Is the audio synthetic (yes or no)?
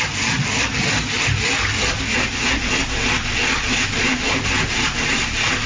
no